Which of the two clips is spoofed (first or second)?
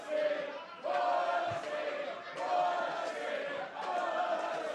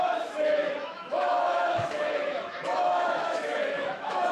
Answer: second